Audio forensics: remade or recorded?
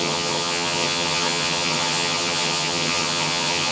remade